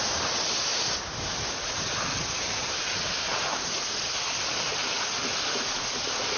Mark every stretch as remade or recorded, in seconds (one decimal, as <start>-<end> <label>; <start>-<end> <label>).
0.0-3.3 recorded; 3.3-4.3 remade; 4.3-6.4 recorded